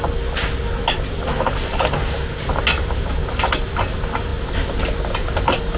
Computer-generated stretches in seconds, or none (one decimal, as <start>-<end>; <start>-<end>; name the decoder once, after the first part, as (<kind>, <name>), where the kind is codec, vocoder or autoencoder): none